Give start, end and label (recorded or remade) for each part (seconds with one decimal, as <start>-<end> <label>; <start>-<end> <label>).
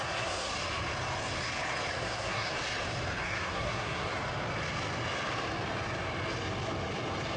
0.0-0.5 remade; 0.5-1.9 recorded; 1.9-2.5 remade; 2.5-3.2 recorded; 3.2-4.1 remade; 4.1-7.4 recorded